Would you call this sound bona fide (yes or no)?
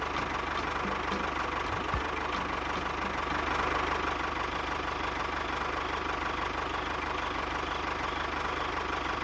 yes